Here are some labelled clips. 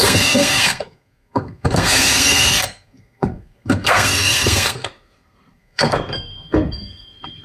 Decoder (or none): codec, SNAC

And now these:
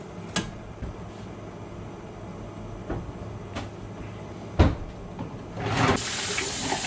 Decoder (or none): none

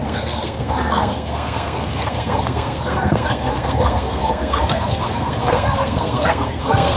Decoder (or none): codec, SNAC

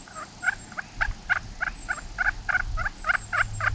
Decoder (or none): none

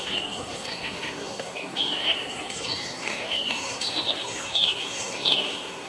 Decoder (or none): codec, SNAC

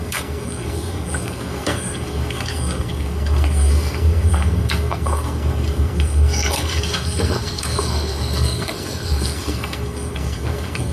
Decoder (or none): codec, SNAC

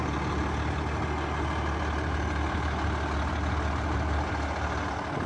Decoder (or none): none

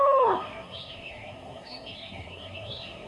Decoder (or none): codec, SNAC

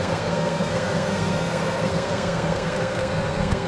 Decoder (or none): codec, SNAC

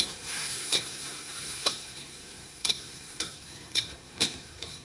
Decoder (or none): codec, SNAC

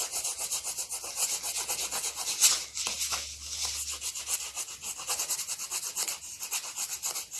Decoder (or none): none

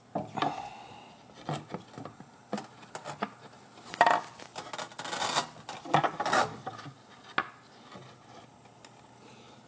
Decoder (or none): none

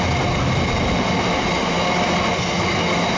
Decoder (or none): none